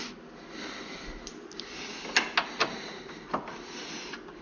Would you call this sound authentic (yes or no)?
yes